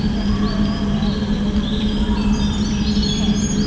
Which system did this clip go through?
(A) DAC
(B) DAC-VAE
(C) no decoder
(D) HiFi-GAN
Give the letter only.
C